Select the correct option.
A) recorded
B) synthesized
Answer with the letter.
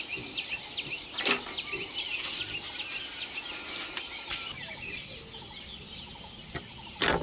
A